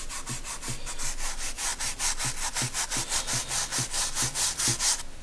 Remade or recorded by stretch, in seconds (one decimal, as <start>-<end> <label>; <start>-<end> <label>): 0.0-5.2 recorded